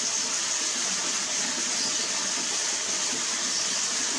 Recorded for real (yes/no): yes